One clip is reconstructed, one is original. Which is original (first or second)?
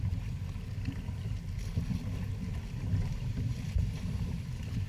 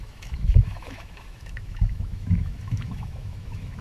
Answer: first